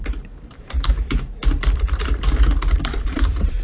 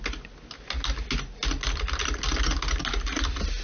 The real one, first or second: second